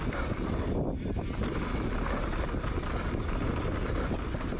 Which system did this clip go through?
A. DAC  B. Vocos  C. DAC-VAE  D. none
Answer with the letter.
D